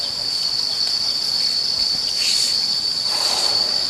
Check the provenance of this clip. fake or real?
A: real